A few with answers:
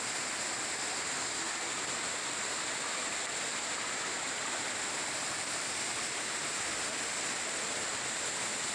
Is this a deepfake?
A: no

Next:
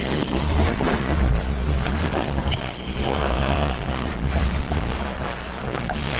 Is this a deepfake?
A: yes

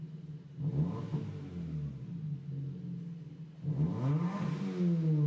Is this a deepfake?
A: no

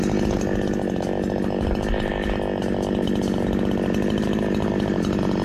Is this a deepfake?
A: no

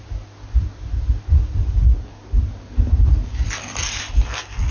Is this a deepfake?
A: no